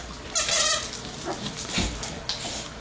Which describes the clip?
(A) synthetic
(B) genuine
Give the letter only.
B